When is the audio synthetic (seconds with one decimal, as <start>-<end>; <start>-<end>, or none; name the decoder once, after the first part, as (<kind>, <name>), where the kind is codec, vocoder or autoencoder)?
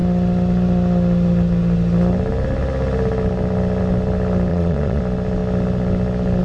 4.5-5.0 (vocoder, Vocos)